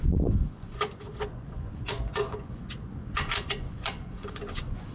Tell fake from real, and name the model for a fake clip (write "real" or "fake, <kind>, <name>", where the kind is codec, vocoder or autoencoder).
fake, vocoder, Vocos